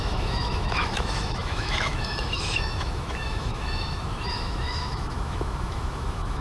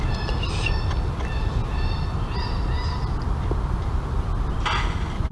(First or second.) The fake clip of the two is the first